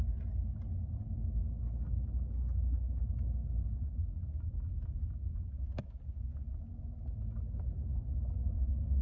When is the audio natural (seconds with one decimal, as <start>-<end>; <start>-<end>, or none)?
0.0-9.0